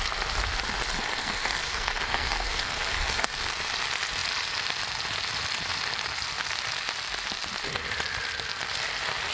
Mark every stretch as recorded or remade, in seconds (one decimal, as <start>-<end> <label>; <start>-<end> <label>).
0.0-1.2 recorded; 1.2-3.5 remade; 3.5-9.3 recorded